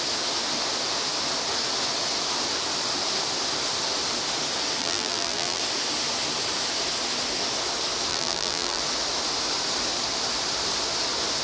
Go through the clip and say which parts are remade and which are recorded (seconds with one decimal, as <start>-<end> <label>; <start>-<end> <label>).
0.0-4.8 recorded; 4.8-5.6 remade; 5.6-8.1 recorded; 8.1-8.8 remade; 8.8-11.4 recorded